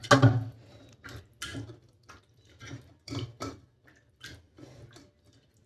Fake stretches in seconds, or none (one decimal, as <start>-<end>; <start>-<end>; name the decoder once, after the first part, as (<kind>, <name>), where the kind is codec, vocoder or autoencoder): 1.5-4.8 (vocoder, BigVGAN v2)